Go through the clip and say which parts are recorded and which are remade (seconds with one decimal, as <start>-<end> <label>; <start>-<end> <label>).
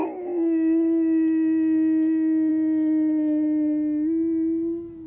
0.0-5.1 recorded